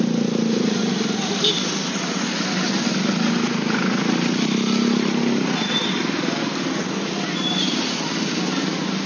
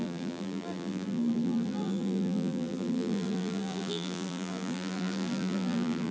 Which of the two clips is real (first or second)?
first